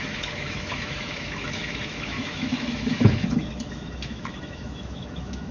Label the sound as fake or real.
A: fake